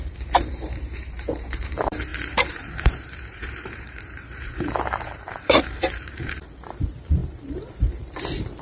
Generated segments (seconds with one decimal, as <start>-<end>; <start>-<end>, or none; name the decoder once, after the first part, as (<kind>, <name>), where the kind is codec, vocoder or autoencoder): 0.0-8.6 (vocoder, BigVGAN v2)